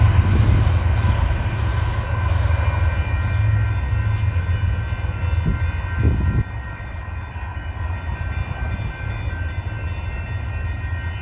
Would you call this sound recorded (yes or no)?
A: yes